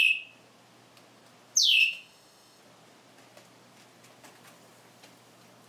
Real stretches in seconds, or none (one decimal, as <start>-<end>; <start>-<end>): 0.0-1.8; 2.6-5.7